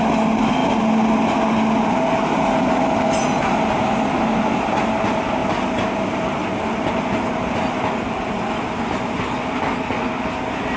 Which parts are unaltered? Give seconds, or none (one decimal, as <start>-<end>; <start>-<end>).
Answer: 0.0-10.8